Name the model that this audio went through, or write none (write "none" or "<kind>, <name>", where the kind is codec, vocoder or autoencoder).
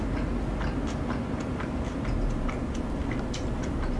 none